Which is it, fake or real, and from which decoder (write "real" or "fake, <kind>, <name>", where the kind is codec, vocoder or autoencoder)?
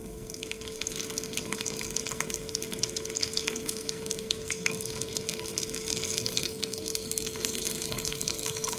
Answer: fake, codec, SNAC